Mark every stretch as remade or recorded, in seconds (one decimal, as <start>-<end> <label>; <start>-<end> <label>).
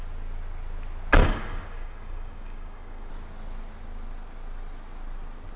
0.0-1.2 recorded; 1.2-3.1 remade; 3.1-5.6 recorded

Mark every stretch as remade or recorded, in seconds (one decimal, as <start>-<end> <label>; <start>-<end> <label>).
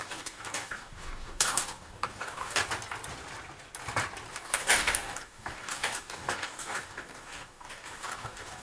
0.0-2.6 remade; 2.6-4.3 recorded; 4.3-8.6 remade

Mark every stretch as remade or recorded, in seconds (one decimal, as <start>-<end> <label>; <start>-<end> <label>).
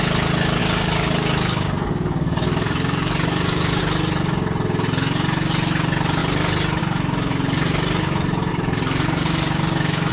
0.0-0.6 recorded; 0.6-3.8 remade; 3.8-8.5 recorded; 8.5-10.1 remade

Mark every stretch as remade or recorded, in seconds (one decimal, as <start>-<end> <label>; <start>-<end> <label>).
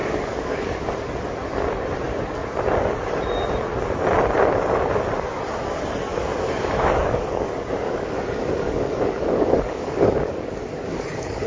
0.0-0.9 remade; 0.9-6.1 recorded; 6.1-11.5 remade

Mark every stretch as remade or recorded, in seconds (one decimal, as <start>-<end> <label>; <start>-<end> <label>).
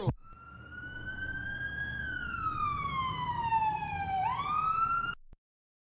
0.0-0.7 recorded; 0.7-4.2 remade; 4.2-5.9 recorded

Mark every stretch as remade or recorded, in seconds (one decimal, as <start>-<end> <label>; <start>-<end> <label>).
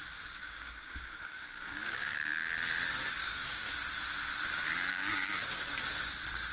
0.0-0.4 recorded; 0.4-2.5 remade; 2.5-3.2 recorded; 3.2-3.7 remade; 3.7-4.9 recorded; 4.9-5.6 remade; 5.6-6.5 recorded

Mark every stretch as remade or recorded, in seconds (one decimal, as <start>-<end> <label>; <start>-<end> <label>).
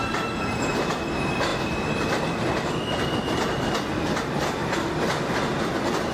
0.0-6.1 recorded